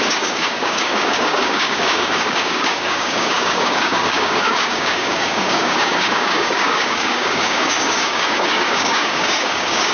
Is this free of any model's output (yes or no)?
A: no